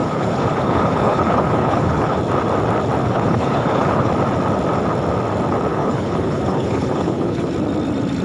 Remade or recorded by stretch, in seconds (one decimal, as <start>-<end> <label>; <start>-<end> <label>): 0.0-2.2 remade; 2.2-3.0 recorded; 3.0-4.1 remade; 4.1-5.7 recorded; 5.7-7.5 remade; 7.5-8.2 recorded